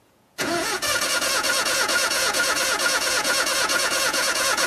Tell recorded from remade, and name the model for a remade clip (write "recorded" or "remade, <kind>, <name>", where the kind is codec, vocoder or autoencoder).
remade, vocoder, Vocos